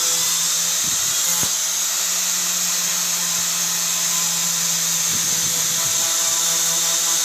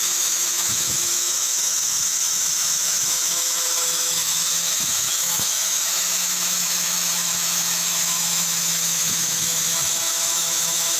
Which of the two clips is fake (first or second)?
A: second